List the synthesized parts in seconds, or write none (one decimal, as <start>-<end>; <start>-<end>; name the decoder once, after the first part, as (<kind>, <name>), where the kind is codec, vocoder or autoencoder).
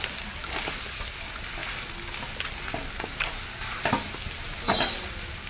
none